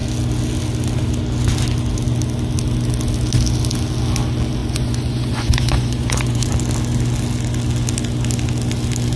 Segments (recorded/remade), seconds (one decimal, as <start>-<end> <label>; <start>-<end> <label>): 0.0-4.6 recorded; 4.6-6.5 remade; 6.5-9.2 recorded